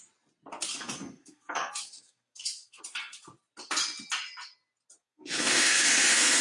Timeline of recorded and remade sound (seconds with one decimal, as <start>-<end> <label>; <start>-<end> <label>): 0.0-0.7 recorded; 0.7-2.8 remade; 2.8-5.0 recorded; 5.0-6.4 remade